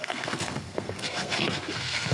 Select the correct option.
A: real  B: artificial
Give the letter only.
B